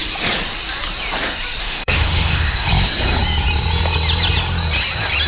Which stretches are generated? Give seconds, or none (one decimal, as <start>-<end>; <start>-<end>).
1.6-2.7